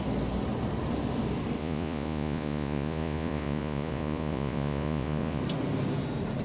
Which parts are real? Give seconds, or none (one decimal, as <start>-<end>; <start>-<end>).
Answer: 0.0-1.6; 5.4-6.4